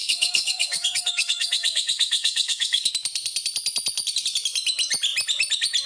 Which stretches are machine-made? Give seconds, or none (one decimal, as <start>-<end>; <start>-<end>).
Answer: 0.0-2.9